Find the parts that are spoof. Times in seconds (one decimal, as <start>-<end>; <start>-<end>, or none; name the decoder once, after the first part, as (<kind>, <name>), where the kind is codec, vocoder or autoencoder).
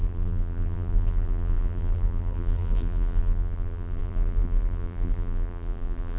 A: 0.0-6.2 (vocoder, BigVGAN v2)